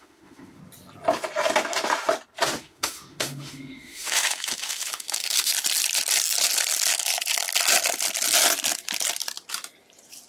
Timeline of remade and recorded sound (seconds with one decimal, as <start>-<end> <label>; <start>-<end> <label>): 0.0-0.6 remade; 0.6-2.6 recorded; 2.6-5.5 remade; 5.5-10.3 recorded